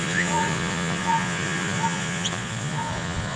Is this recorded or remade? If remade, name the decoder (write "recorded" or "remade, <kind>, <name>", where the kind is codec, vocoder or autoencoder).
remade, vocoder, Vocos